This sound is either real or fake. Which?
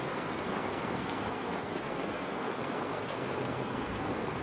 fake